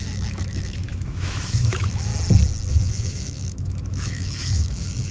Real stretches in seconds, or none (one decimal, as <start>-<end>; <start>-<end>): 2.1-2.7